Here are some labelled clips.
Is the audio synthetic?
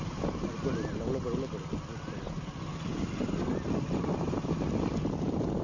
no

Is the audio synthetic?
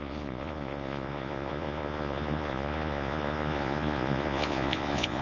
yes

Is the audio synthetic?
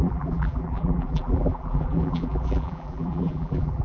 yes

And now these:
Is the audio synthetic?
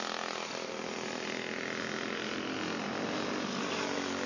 no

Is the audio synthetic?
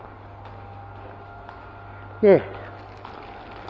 no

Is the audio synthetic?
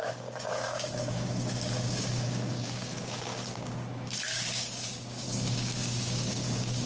yes